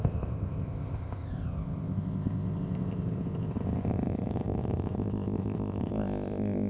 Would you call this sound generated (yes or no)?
yes